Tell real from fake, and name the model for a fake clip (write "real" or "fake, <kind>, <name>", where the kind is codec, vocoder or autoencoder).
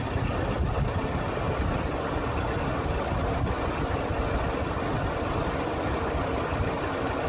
real